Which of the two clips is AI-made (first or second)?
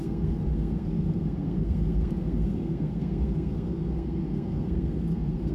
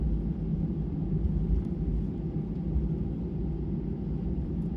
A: first